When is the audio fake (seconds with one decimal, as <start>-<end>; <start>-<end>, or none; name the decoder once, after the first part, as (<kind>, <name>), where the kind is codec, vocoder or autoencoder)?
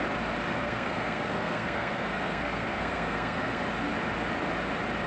0.5-3.6 (codec, SNAC)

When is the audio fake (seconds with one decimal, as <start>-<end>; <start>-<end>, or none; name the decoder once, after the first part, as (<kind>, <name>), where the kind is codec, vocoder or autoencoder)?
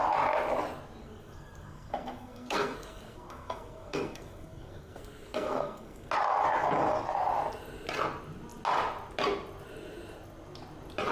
1.0-6.1 (codec, SNAC)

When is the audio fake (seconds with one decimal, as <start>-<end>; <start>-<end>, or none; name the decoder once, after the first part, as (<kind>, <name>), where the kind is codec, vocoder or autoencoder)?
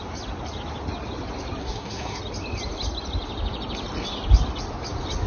1.6-2.2 (codec, SNAC)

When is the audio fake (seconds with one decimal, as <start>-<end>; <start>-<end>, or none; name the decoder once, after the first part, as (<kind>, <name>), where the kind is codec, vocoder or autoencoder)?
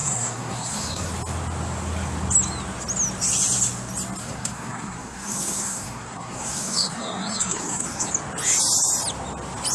0.0-1.1 (codec, SNAC); 4.2-8.1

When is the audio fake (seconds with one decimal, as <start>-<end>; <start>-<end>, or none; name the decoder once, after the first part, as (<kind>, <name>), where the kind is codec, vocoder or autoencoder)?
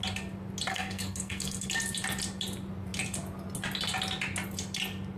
0.7-1.7 (codec, SNAC)